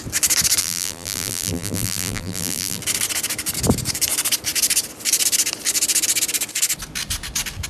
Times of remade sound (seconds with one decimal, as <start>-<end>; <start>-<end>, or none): 0.6-2.8